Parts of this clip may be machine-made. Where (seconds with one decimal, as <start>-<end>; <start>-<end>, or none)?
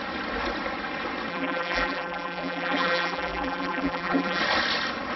1.3-4.4